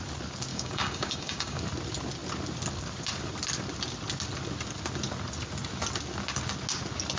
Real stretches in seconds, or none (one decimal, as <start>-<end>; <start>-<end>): 0.0-0.5; 1.6-7.2